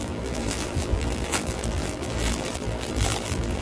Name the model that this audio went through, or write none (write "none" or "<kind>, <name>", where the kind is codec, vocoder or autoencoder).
vocoder, BigVGAN v2